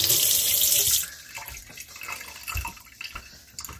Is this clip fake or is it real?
real